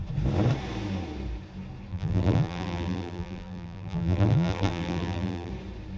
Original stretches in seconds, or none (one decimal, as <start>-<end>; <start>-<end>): 0.0-1.9; 5.5-6.0